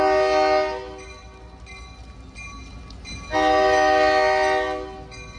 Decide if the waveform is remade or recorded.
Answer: recorded